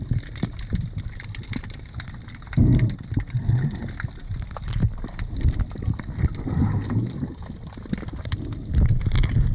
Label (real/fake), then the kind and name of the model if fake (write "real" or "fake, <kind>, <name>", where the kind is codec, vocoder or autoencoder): real